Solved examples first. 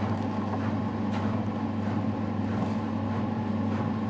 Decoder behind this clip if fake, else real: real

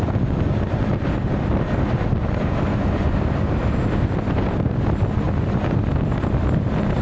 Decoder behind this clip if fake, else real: real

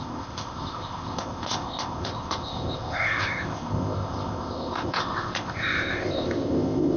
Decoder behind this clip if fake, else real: fake, codec, ZipCodec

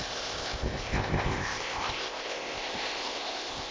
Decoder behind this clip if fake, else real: fake, codec, ZipCodec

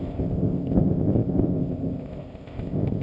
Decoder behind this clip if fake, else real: fake, codec, ZipCodec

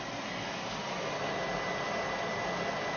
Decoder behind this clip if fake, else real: real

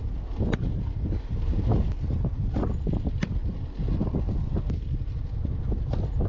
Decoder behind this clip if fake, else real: real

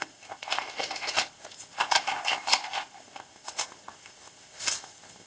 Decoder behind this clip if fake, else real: fake, codec, ZipCodec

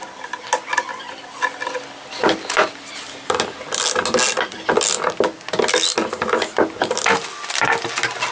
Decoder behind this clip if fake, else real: real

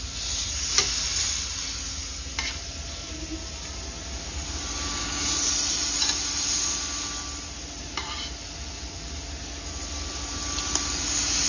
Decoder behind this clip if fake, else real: real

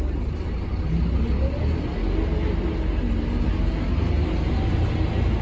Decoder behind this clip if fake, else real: real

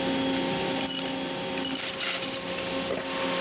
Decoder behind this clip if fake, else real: real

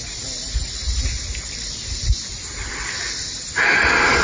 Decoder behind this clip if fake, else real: real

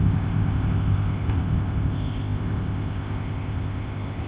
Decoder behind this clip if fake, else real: fake, codec, ZipCodec